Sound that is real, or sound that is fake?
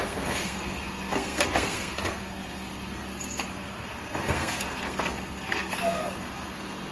fake